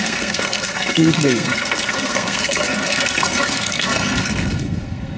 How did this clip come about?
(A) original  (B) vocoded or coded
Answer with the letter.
B